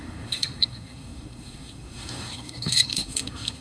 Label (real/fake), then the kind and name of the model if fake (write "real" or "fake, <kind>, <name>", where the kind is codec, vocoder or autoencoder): fake, codec, SNAC